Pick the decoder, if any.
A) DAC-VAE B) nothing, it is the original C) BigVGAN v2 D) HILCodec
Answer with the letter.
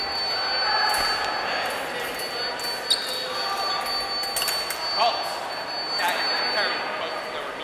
B